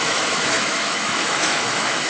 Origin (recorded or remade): remade